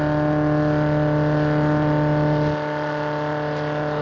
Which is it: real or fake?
real